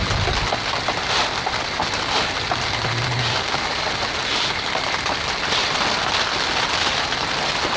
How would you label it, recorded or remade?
recorded